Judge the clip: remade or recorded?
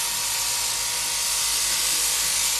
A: recorded